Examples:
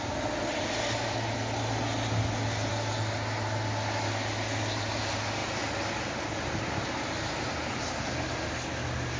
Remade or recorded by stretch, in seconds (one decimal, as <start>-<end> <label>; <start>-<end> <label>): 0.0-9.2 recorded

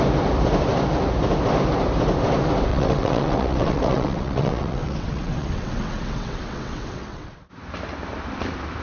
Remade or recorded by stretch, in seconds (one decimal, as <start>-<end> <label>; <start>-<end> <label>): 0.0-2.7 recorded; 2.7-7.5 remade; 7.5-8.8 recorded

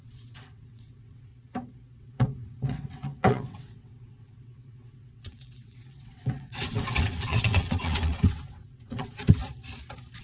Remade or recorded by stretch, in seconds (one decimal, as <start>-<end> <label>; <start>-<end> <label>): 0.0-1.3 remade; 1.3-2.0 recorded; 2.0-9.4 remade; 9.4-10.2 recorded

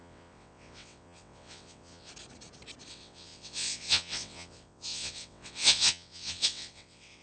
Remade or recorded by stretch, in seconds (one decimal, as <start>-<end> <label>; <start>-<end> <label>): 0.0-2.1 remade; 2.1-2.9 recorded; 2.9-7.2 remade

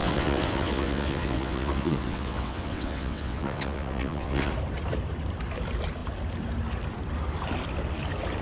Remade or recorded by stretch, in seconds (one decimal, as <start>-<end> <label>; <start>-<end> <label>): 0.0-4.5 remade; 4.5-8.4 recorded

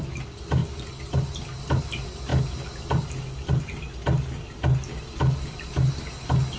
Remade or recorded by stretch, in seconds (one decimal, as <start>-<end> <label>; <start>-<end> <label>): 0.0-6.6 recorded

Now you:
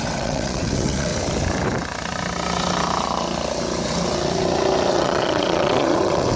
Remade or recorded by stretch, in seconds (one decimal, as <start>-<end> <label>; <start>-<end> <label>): 0.0-1.1 remade; 1.1-4.9 recorded; 4.9-6.4 remade

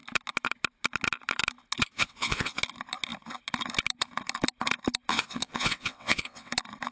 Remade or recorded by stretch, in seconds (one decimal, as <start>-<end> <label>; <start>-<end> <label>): 0.0-1.9 recorded; 1.9-2.6 remade; 2.6-5.1 recorded; 5.1-6.5 remade; 6.5-6.9 recorded